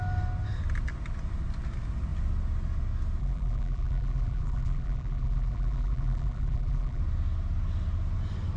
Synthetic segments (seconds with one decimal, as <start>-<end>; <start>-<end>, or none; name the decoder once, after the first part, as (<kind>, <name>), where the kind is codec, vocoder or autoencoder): 3.2-7.0 (vocoder, BigVGAN v2)